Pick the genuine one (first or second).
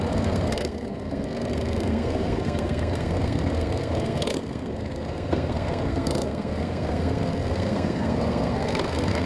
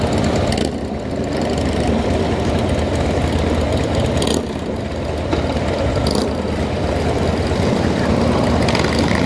second